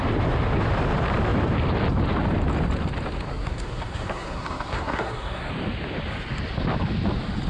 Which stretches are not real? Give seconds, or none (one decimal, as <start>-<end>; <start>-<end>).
3.3-5.5

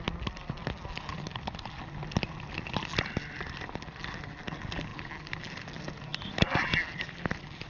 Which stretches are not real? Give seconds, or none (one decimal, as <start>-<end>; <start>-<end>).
6.1-7.7

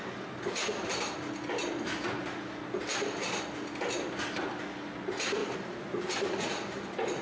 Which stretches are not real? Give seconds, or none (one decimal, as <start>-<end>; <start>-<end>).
none

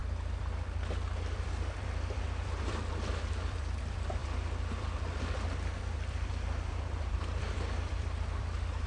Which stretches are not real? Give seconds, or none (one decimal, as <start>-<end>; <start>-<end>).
0.0-8.9

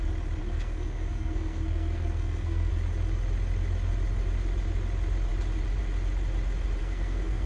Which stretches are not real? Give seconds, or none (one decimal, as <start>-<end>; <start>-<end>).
0.4-2.7; 6.8-7.5

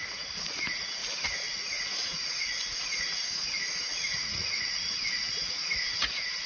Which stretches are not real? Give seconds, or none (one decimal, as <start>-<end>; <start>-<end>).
0.0-1.0; 1.5-6.5

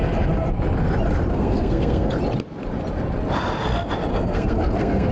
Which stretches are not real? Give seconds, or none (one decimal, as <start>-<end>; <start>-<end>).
1.3-2.1; 4.1-5.1

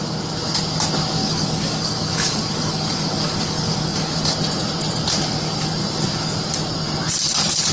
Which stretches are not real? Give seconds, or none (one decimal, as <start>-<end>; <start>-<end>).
1.2-4.2